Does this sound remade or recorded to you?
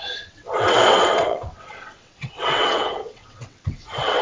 remade